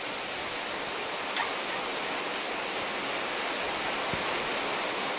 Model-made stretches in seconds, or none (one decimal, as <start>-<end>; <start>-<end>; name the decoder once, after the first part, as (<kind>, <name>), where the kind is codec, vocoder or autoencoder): none